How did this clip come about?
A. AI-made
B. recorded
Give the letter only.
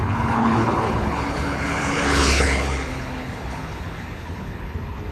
A